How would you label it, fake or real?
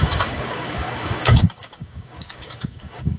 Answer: fake